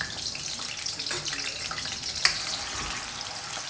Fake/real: real